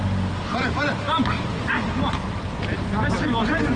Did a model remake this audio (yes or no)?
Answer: no